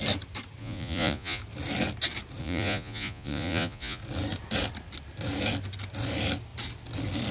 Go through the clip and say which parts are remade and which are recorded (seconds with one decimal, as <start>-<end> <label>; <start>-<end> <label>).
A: 0.0-0.6 recorded; 0.6-1.4 remade; 1.4-2.4 recorded; 2.4-4.0 remade; 4.0-7.3 recorded